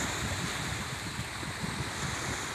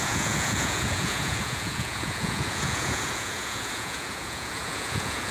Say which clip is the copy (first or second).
second